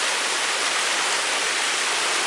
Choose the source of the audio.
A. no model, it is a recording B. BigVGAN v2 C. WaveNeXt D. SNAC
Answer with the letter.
B